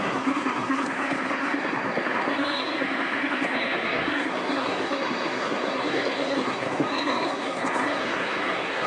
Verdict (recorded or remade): remade